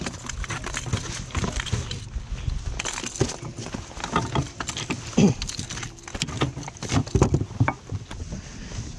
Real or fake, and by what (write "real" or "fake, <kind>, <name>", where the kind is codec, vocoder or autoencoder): real